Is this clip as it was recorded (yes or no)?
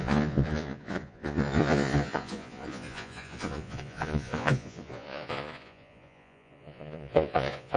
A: no